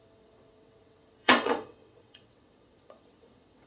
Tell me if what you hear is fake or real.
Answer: fake